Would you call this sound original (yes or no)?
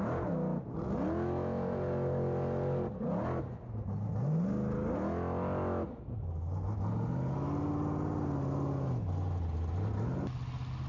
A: yes